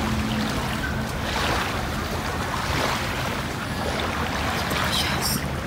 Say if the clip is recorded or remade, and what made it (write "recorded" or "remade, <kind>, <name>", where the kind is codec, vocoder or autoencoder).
recorded